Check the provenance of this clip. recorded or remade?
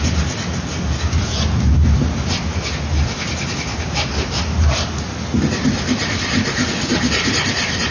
recorded